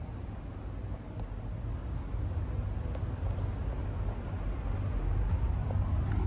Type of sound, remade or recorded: recorded